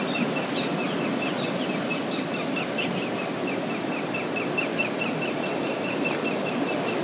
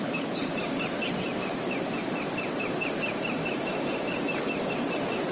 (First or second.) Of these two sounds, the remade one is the second